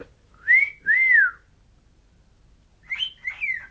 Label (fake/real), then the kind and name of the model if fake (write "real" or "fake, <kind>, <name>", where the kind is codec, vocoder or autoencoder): real